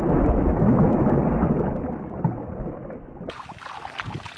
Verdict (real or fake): real